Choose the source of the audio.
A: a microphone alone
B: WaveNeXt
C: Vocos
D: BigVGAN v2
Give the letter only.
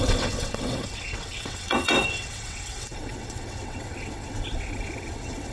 B